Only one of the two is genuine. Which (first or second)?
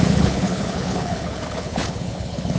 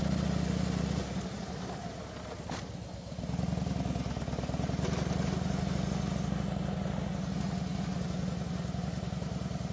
second